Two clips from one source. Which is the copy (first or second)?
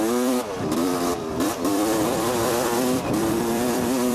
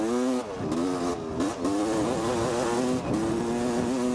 first